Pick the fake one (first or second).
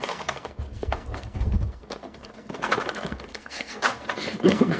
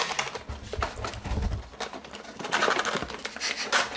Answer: first